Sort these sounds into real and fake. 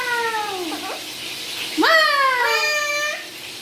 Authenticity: real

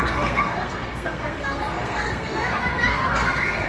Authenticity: fake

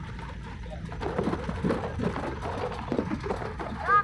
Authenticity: real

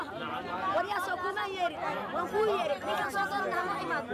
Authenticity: real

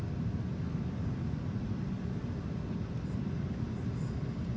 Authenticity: real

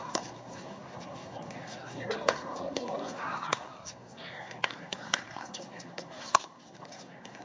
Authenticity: fake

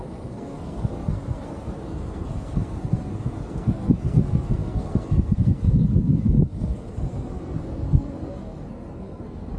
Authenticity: fake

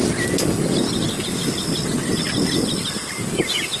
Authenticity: real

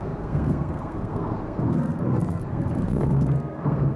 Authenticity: fake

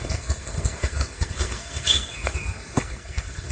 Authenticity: fake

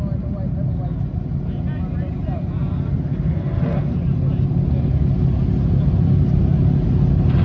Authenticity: real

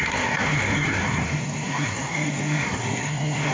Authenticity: fake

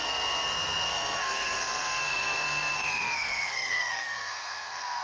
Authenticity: fake